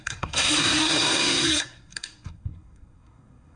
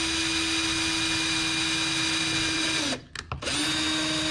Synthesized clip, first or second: first